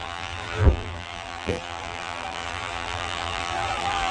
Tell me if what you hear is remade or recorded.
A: remade